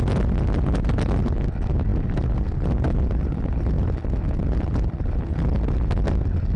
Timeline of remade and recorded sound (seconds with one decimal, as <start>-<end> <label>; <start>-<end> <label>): 0.0-6.6 recorded